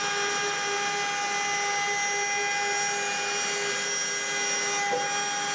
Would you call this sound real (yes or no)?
yes